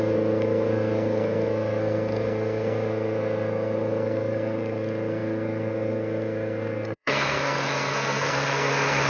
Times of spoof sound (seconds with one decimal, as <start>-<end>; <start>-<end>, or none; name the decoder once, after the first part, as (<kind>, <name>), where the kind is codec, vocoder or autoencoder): 0.0-9.1 (codec, SNAC)